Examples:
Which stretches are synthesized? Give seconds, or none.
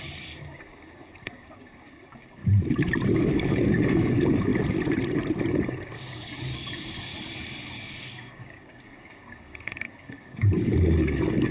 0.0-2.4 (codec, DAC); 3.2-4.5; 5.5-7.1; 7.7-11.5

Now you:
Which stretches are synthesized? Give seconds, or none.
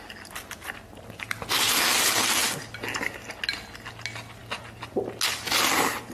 none